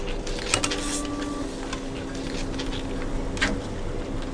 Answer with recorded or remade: recorded